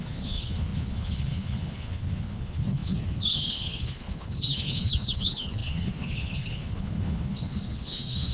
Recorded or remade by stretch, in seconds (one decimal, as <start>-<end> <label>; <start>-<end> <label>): 0.0-8.3 remade